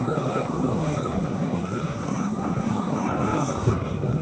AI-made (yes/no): yes